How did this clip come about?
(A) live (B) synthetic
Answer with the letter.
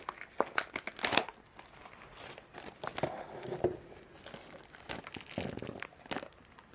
A